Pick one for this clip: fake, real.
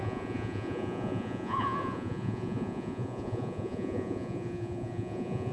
fake